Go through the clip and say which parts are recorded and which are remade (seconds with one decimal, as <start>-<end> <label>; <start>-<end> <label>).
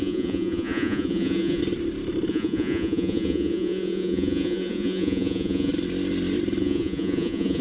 0.0-1.6 remade; 1.6-2.3 recorded; 2.3-5.7 remade; 5.7-6.6 recorded; 6.6-7.6 remade